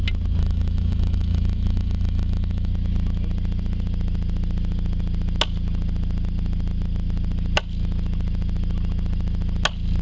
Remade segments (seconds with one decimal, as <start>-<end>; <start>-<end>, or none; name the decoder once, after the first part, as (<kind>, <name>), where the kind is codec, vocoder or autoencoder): 0.4-2.7 (autoencoder, DAC-VAE)